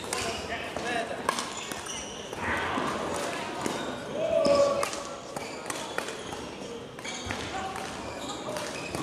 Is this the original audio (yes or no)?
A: yes